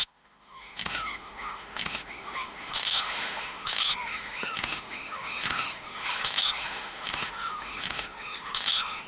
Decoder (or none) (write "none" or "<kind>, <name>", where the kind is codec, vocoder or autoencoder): autoencoder, DAC-VAE